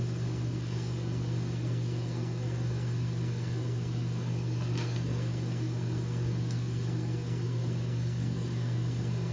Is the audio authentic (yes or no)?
no